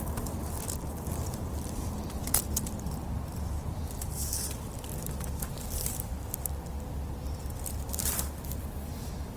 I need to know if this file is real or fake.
fake